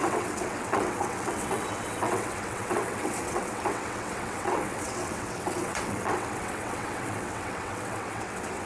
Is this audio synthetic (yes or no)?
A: yes